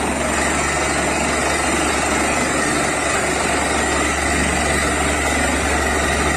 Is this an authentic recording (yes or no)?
yes